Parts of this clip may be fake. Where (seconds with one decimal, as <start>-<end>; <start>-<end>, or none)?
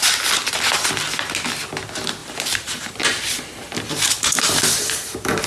2.2-5.5